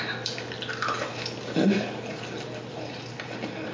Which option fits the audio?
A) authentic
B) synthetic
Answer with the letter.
A